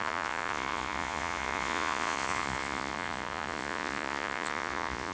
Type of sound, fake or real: fake